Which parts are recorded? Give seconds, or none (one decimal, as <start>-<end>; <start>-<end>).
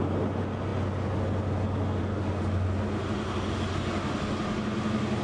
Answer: 0.0-5.2